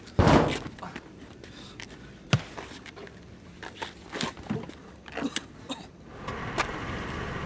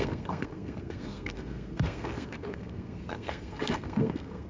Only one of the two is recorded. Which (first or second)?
first